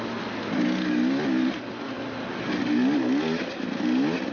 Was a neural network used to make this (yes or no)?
no